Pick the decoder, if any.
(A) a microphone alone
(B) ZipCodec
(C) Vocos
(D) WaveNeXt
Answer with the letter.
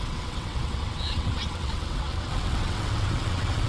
D